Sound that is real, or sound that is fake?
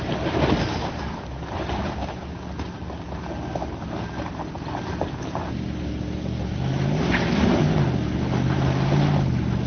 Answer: real